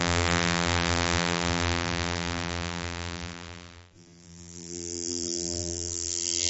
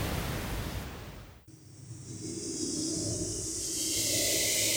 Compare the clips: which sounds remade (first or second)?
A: first